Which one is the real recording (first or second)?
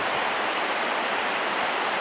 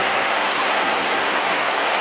first